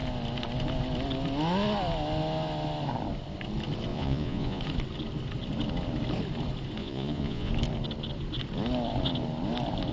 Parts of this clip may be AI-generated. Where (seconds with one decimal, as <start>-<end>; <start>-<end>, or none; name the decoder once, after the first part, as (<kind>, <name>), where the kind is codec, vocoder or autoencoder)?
3.9-4.6 (vocoder, Vocos); 6.8-7.5